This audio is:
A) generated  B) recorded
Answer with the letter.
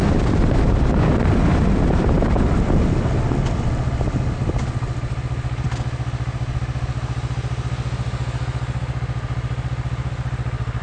B